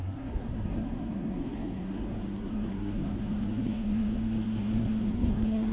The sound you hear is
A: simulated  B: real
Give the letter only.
A